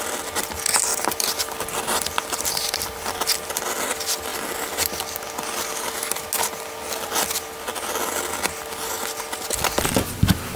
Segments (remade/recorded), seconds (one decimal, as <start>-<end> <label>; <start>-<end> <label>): 0.0-0.9 recorded; 0.9-3.5 remade; 3.5-10.6 recorded